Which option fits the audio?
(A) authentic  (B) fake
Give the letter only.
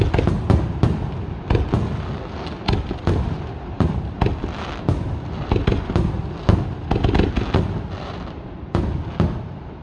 A